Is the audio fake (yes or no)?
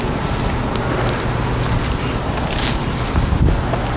no